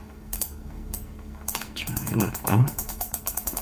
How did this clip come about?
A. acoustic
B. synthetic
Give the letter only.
B